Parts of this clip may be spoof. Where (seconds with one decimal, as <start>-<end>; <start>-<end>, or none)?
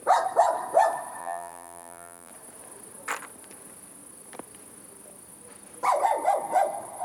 1.2-2.3